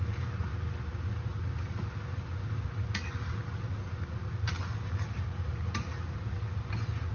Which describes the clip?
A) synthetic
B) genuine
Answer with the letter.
B